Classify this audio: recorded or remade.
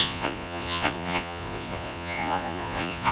remade